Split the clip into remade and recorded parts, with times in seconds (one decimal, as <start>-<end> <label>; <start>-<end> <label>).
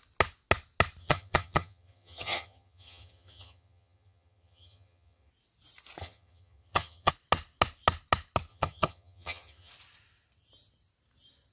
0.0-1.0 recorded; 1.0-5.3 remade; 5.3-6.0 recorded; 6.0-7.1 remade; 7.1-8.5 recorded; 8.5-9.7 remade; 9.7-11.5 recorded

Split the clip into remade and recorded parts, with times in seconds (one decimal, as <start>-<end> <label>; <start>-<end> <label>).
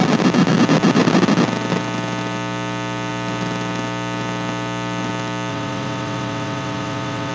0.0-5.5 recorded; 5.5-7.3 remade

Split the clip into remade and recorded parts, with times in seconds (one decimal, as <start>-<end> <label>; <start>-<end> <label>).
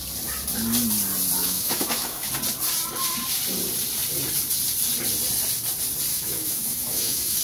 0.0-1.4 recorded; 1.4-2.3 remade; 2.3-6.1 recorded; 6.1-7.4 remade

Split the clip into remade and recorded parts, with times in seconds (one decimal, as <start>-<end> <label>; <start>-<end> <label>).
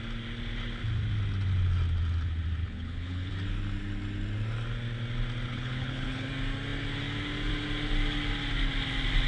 0.0-2.6 recorded; 2.6-3.3 remade; 3.3-5.5 recorded; 5.5-6.3 remade; 6.3-9.3 recorded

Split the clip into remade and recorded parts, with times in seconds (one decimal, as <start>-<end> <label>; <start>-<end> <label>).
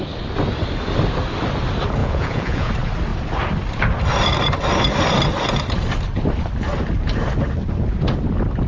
0.0-2.0 recorded; 2.0-2.7 remade; 2.7-8.7 recorded